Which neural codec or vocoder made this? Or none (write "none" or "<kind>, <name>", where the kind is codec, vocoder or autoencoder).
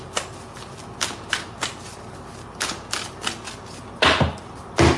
none